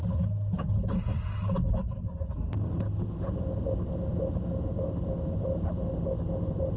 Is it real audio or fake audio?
real